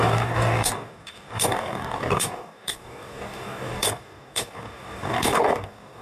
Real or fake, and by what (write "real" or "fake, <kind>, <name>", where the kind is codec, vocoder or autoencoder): fake, codec, DAC